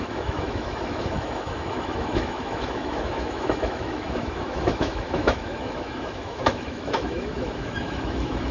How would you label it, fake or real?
fake